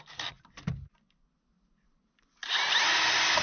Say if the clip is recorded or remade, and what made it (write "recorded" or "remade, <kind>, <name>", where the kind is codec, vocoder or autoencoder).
recorded